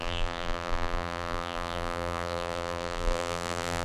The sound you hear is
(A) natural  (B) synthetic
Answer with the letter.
B